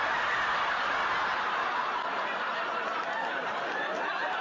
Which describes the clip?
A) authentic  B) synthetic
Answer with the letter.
A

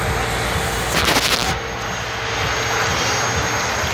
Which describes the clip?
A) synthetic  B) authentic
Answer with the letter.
B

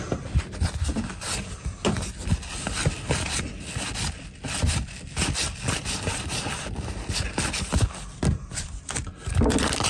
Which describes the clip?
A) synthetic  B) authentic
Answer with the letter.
B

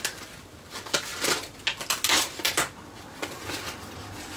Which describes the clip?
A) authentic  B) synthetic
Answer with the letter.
A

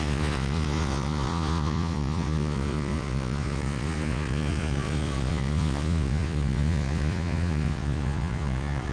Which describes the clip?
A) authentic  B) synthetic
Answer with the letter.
B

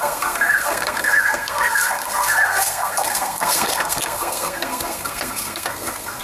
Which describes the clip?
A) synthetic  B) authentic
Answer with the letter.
A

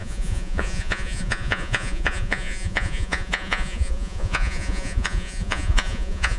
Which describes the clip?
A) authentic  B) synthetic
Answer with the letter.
B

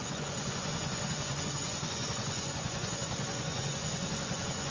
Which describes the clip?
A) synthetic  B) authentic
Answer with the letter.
A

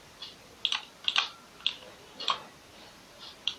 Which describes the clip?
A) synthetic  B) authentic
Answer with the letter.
B